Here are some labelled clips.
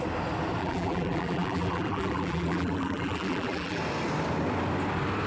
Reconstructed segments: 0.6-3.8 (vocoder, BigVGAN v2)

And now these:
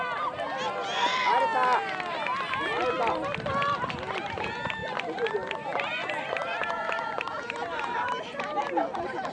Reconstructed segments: 6.0-8.4 (vocoder, BigVGAN v2)

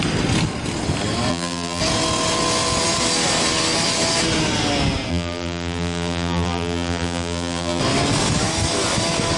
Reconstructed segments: 1.3-1.8 (vocoder, BigVGAN v2); 5.1-7.8